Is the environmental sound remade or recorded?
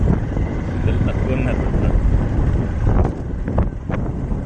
recorded